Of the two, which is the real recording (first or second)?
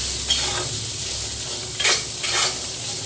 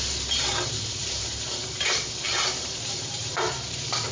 first